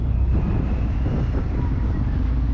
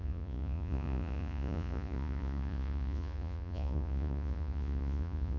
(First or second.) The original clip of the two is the first